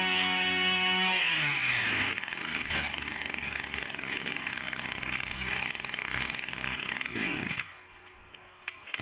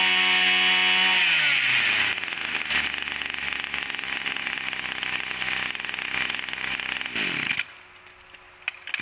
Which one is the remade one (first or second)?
first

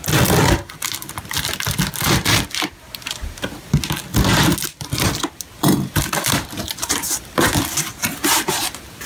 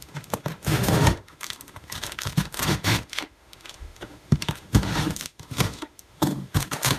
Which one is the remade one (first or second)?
second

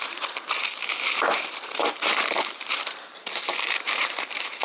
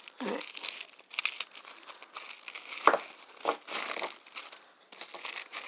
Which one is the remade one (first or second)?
first